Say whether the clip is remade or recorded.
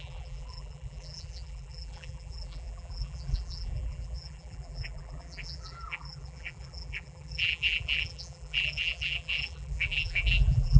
remade